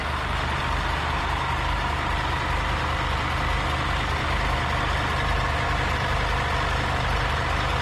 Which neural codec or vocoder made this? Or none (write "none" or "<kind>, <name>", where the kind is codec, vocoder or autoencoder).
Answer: none